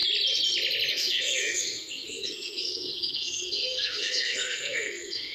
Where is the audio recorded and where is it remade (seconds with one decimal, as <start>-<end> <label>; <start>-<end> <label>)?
0.0-0.9 recorded; 0.9-5.3 remade